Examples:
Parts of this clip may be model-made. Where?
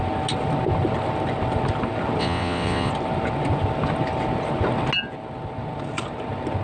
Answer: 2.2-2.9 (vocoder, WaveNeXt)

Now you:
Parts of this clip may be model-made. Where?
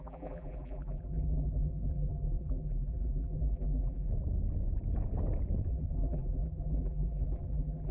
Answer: 0.0-4.1 (vocoder, BigVGAN v2); 5.7-7.9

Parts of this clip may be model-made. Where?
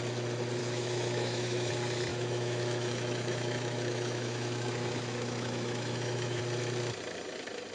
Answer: 0.6-1.7 (autoencoder, DAC-VAE); 2.1-6.4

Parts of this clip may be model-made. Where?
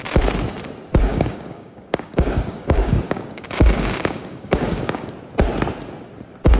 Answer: 1.1-5.1 (codec, DAC)